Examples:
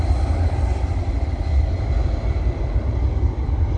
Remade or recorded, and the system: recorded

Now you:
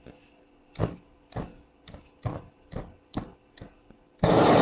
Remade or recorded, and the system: recorded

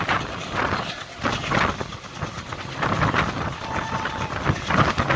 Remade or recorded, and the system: recorded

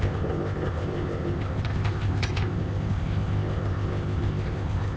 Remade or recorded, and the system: remade, codec, ZipCodec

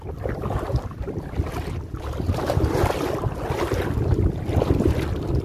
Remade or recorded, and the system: recorded